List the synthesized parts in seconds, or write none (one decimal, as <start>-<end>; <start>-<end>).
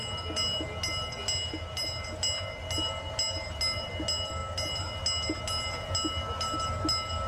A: none